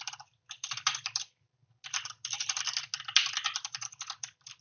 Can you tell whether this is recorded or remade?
recorded